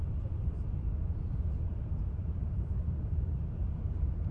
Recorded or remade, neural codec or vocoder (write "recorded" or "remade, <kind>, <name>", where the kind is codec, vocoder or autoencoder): remade, vocoder, BigVGAN v2